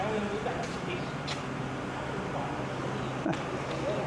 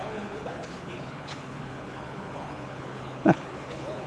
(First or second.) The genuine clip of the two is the first